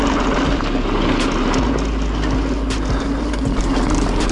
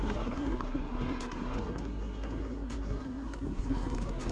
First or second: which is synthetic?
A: second